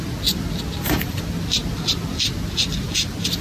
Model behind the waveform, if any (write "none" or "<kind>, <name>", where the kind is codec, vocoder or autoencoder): none